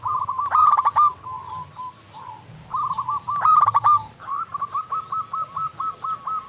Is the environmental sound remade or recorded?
recorded